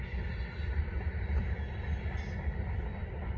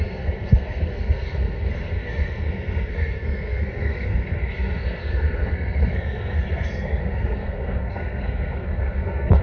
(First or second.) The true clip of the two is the first